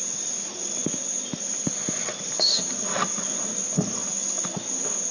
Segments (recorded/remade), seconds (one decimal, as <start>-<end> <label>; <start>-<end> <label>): 0.0-5.1 recorded